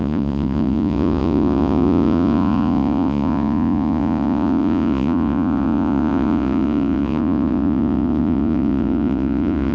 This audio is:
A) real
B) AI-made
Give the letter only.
B